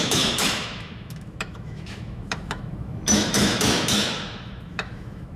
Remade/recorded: remade